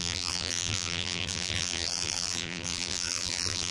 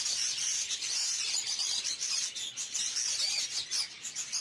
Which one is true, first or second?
second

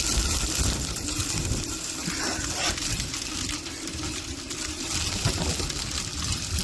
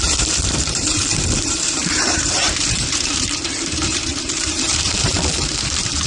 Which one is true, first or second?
first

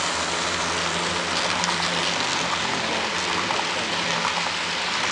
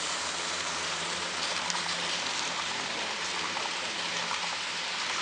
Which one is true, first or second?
first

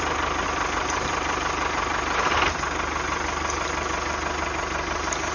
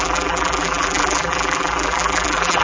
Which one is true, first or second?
first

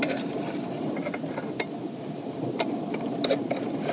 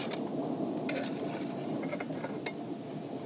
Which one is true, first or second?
second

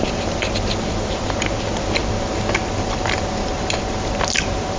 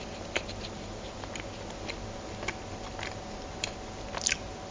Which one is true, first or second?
second